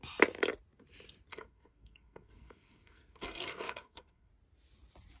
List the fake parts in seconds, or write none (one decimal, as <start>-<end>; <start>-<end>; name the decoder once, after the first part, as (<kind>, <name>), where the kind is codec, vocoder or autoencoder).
1.3-4.3 (codec, SNAC)